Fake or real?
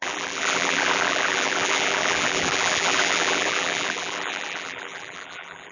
fake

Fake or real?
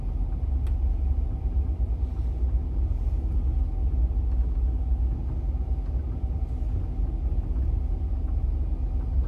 real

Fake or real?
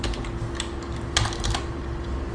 real